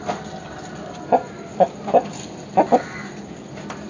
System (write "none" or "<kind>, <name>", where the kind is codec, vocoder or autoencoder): none